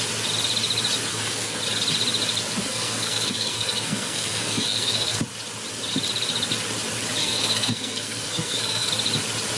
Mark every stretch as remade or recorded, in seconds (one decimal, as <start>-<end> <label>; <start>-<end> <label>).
0.0-1.1 recorded; 1.1-1.6 remade; 1.6-2.6 recorded; 2.6-5.2 remade; 5.2-7.2 recorded; 7.2-8.9 remade; 8.9-9.6 recorded